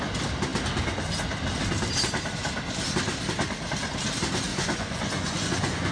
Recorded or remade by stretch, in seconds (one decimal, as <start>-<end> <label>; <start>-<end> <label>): 0.0-4.5 recorded; 4.5-5.9 remade